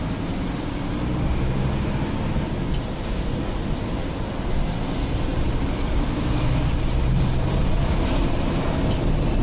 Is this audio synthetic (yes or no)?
no